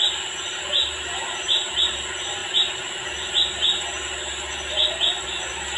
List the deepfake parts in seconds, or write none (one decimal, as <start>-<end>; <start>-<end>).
none